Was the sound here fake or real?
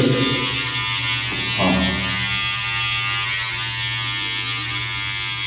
real